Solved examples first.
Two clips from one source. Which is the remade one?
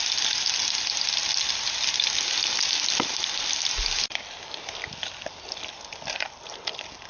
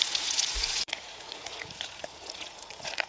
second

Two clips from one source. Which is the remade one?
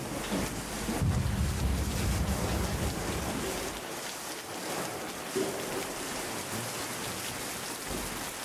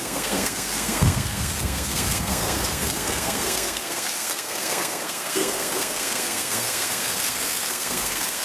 second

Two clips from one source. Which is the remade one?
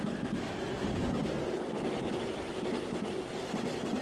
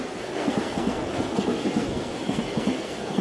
second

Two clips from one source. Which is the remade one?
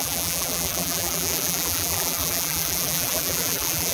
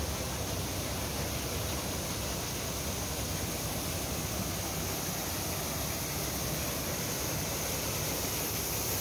first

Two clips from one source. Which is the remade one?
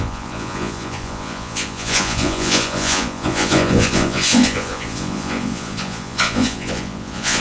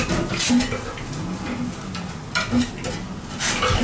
first